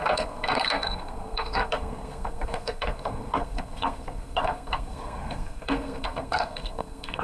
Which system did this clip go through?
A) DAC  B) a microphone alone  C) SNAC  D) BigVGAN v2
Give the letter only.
C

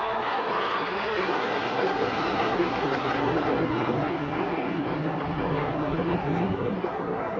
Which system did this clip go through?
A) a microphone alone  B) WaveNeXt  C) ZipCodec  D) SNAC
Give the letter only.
D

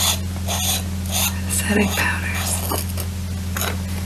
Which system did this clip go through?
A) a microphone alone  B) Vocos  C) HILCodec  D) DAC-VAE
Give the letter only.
A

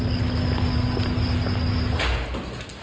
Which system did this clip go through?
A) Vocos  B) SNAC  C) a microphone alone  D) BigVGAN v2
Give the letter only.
C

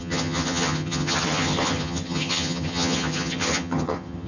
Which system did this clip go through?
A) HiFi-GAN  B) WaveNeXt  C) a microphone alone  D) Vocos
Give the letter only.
A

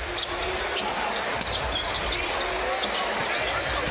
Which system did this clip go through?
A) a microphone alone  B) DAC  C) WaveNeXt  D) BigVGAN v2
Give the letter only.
A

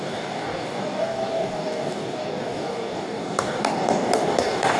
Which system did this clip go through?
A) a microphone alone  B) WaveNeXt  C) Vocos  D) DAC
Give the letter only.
D